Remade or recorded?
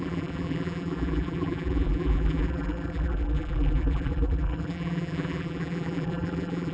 remade